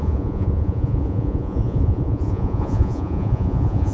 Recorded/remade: remade